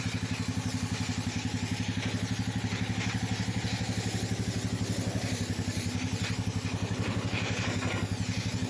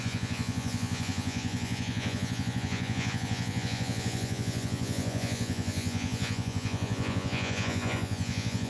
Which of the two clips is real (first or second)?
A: first